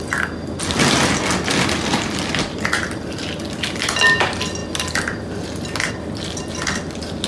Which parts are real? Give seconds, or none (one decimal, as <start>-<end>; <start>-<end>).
0.0-7.3